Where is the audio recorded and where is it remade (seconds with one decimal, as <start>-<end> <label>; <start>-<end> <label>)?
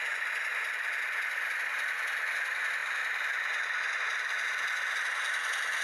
0.0-5.8 recorded